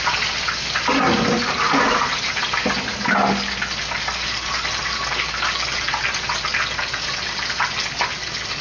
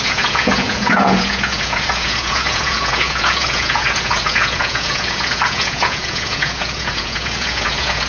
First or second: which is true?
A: first